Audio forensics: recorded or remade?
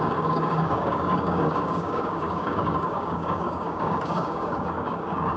remade